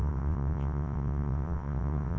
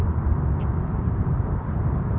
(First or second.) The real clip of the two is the second